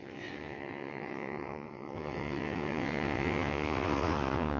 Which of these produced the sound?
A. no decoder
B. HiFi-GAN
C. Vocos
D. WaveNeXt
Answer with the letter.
D